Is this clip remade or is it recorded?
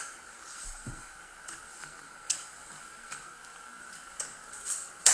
remade